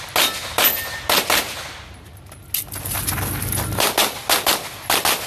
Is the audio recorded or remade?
recorded